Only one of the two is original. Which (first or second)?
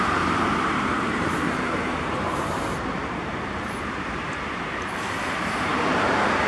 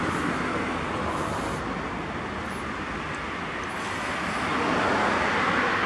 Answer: second